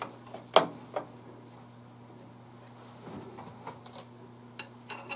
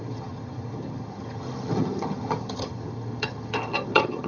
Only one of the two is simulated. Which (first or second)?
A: second